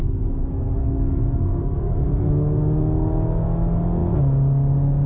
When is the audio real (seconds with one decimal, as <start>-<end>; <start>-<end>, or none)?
2.3-5.1